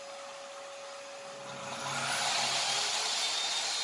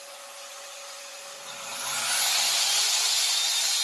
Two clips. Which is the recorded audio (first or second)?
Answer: first